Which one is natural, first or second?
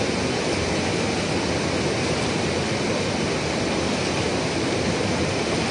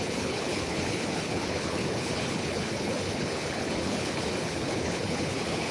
first